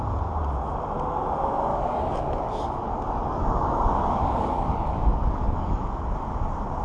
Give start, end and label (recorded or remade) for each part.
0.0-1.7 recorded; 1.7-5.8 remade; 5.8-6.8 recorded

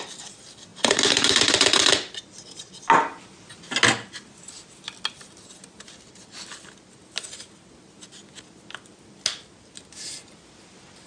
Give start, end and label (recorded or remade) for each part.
0.0-11.1 recorded

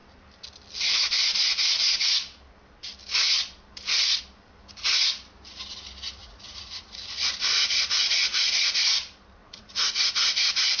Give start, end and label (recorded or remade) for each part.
0.0-6.2 recorded; 6.2-7.3 remade; 7.3-9.4 recorded; 9.4-10.0 remade; 10.0-10.8 recorded

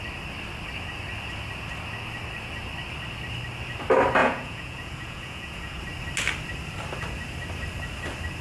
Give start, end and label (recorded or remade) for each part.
0.0-4.2 recorded; 4.2-5.8 remade; 5.8-8.4 recorded

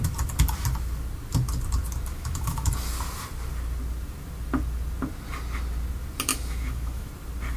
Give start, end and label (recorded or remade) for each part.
0.0-2.1 recorded; 2.1-2.7 remade; 2.7-6.3 recorded; 6.3-7.1 remade; 7.1-7.6 recorded

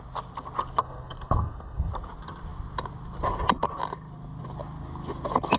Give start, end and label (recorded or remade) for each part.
0.0-0.8 recorded; 0.8-1.9 remade; 1.9-5.6 recorded

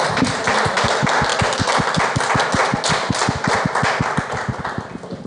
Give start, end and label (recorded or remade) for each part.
0.0-5.3 recorded

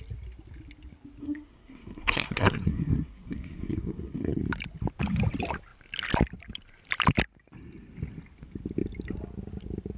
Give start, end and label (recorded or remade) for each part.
0.0-1.2 recorded; 1.2-4.4 remade; 4.4-10.0 recorded